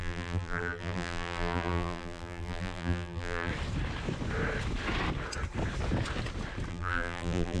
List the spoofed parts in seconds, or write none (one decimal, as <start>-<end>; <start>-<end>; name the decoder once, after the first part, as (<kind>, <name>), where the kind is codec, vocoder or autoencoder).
0.0-3.5 (vocoder, BigVGAN v2); 6.7-7.6